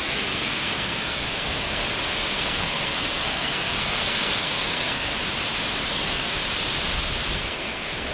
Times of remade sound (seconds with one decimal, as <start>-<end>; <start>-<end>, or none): 0.0-1.8; 2.3-5.1; 5.9-6.4; 7.3-8.1